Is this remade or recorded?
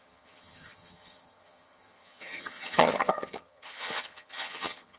remade